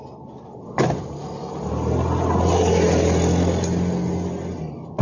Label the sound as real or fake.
real